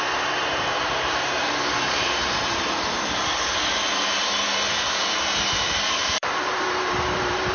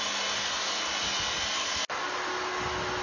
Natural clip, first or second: second